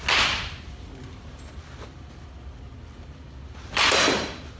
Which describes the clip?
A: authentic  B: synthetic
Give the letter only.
A